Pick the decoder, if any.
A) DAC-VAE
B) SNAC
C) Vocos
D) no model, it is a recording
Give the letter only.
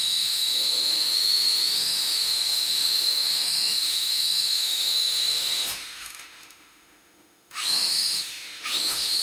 A